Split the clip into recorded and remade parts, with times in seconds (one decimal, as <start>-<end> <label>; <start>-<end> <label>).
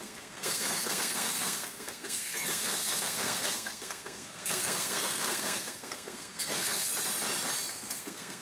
0.0-6.9 remade; 6.9-7.7 recorded; 7.7-8.4 remade